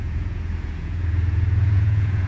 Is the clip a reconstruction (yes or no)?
yes